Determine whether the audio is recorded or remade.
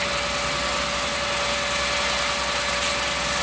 recorded